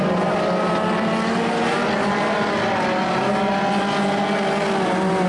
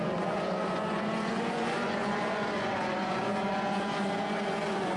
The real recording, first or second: first